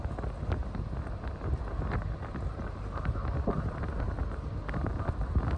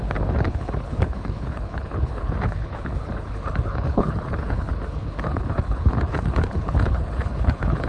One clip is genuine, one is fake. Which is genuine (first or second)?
first